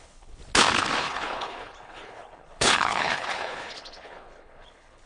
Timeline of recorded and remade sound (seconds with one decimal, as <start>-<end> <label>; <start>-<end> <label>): 0.0-0.4 remade; 0.4-1.0 recorded; 1.0-5.1 remade